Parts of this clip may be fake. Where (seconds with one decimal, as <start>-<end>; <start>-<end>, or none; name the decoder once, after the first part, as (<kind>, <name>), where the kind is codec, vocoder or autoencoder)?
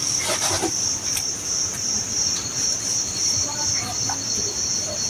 0.6-3.7 (vocoder, BigVGAN v2)